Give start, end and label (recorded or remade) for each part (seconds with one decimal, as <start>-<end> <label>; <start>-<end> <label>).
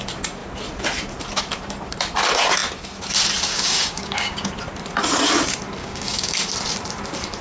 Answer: 0.0-3.5 recorded; 3.5-4.5 remade; 4.5-5.8 recorded; 5.8-6.3 remade; 6.3-7.4 recorded